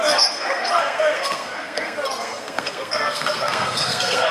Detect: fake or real fake